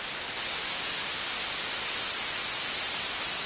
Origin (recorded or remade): recorded